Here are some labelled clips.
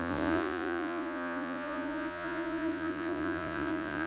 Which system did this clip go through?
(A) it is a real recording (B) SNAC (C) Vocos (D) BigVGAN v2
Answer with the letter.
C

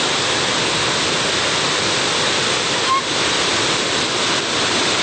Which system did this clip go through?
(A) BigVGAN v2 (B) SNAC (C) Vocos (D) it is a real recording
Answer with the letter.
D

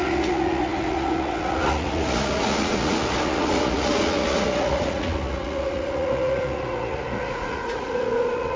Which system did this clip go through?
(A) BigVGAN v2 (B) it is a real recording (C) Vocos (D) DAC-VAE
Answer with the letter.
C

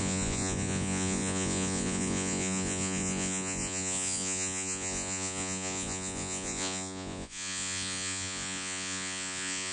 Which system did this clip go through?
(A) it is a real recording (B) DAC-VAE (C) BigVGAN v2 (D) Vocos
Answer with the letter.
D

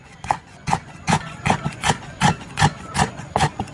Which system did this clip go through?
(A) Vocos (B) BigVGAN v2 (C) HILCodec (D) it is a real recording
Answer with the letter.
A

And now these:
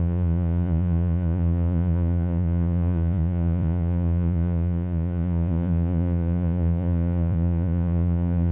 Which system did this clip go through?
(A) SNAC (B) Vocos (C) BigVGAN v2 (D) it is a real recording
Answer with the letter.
B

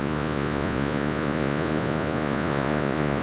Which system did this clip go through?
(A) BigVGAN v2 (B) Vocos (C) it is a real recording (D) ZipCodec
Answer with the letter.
B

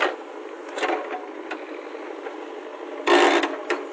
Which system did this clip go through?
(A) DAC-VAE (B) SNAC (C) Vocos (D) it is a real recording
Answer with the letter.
D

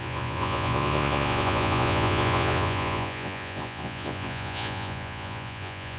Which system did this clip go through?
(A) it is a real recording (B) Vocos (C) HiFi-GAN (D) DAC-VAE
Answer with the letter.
B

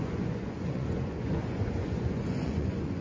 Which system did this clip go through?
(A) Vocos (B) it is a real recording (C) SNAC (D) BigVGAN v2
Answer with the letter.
A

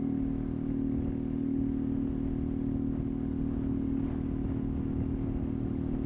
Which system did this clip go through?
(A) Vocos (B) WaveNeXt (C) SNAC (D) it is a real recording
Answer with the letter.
D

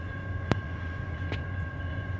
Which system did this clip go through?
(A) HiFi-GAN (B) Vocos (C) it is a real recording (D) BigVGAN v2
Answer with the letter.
B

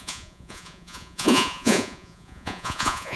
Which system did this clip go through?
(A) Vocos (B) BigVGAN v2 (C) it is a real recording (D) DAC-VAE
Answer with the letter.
A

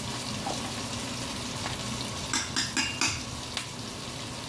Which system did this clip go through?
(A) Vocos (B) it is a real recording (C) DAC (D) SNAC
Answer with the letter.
B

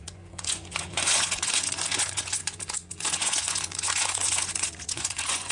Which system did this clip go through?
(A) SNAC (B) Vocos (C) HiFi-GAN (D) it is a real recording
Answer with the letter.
B